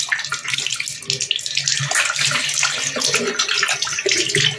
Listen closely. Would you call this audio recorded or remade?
recorded